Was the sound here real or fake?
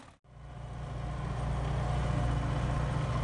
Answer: real